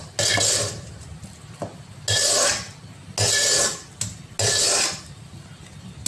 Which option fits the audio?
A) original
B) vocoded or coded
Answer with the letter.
A